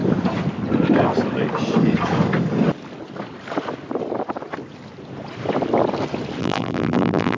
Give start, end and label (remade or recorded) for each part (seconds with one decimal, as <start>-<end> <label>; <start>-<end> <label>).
0.0-6.4 recorded; 6.4-7.4 remade